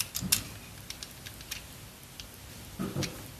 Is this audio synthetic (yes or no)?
no